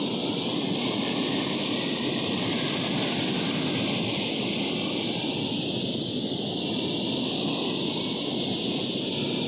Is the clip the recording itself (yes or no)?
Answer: yes